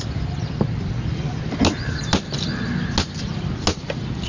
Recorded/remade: recorded